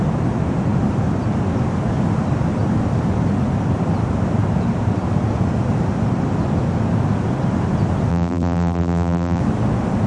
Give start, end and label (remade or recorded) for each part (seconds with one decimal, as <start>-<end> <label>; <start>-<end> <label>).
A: 0.0-8.1 recorded; 8.1-9.4 remade; 9.4-10.1 recorded